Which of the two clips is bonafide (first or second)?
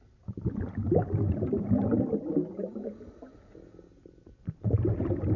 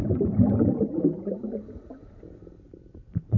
first